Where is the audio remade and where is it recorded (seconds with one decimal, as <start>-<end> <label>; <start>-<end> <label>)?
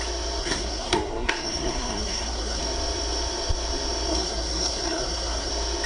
0.0-0.4 recorded; 0.4-2.6 remade; 2.6-4.1 recorded; 4.1-5.5 remade; 5.5-5.9 recorded